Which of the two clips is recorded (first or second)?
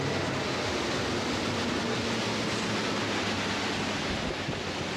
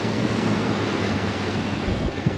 first